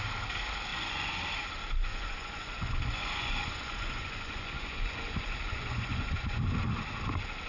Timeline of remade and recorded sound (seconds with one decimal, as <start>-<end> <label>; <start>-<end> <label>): 0.0-0.7 recorded; 0.7-1.2 remade; 1.2-1.9 recorded; 1.9-6.4 remade; 6.4-7.5 recorded